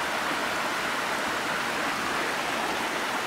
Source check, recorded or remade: recorded